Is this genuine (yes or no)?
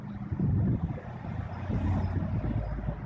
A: yes